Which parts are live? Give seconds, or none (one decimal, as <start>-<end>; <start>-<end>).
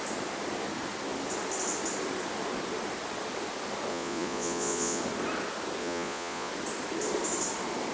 0.0-3.9; 5.0-5.8; 6.5-7.9